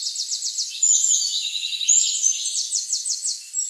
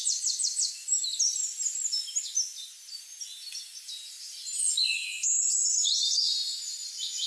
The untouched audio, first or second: second